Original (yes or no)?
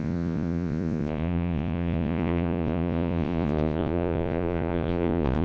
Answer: no